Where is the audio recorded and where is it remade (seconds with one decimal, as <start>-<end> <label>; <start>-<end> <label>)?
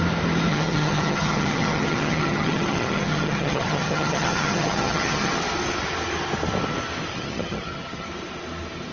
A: 0.0-0.5 recorded; 0.5-5.3 remade; 5.3-7.1 recorded; 7.1-8.1 remade; 8.1-8.9 recorded